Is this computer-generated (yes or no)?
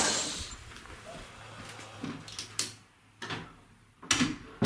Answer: no